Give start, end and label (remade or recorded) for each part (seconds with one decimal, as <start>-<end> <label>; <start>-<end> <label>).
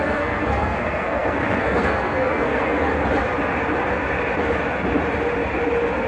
0.0-2.9 remade; 2.9-6.1 recorded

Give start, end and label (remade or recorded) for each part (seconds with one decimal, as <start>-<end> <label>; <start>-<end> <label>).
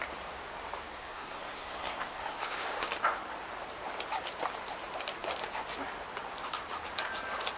0.0-0.9 recorded; 0.9-2.9 remade; 2.9-7.6 recorded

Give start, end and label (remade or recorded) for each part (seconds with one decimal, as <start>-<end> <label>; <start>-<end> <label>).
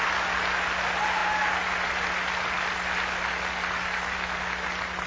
0.0-5.1 recorded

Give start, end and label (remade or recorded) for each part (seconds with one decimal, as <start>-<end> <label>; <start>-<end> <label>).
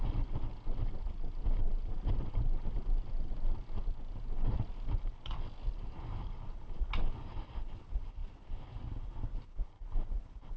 0.0-10.6 recorded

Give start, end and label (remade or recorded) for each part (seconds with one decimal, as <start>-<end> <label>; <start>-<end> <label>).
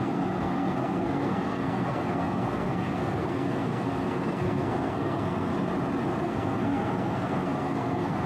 0.0-5.5 remade; 5.5-6.2 recorded; 6.2-8.3 remade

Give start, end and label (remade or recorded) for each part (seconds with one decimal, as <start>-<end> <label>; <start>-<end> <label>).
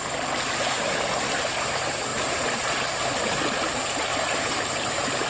0.0-4.1 recorded; 4.1-5.3 remade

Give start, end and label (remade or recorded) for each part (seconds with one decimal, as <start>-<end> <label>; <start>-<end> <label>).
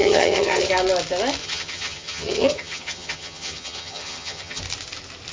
0.0-0.7 remade; 0.7-1.4 recorded; 1.4-4.6 remade; 4.6-5.3 recorded